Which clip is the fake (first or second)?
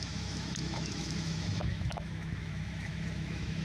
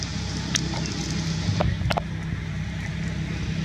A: first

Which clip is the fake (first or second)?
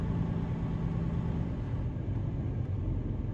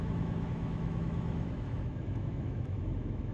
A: second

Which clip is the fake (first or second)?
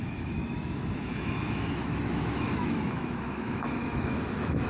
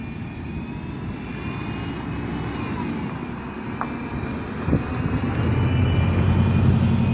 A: first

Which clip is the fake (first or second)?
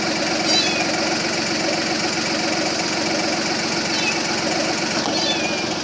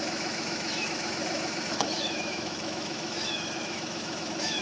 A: second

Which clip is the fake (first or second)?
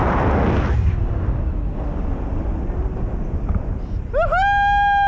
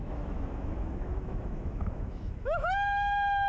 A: second